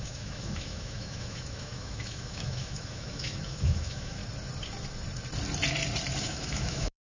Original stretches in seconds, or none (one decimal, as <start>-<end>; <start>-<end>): 4.2-6.2